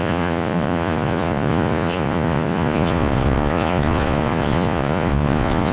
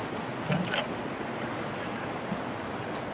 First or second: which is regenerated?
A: first